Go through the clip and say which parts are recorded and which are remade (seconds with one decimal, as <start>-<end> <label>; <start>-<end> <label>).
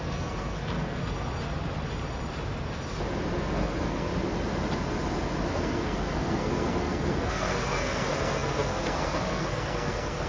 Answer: 0.0-1.0 remade; 1.0-3.4 recorded; 3.4-4.1 remade; 4.1-5.5 recorded; 5.5-10.3 remade